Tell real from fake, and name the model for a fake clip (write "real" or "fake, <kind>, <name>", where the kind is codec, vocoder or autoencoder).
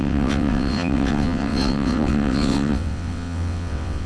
fake, vocoder, WaveNeXt